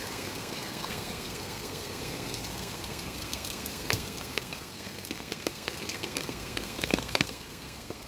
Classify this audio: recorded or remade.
remade